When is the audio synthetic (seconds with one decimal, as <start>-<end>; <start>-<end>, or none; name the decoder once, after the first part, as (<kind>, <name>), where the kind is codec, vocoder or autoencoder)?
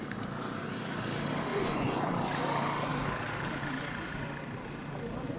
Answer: 1.5-2.1 (vocoder, Vocos)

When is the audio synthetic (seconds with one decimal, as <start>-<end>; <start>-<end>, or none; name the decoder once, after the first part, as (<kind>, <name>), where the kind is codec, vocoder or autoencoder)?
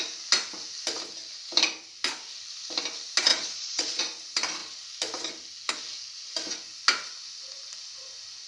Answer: 3.3-4.0 (vocoder, Vocos)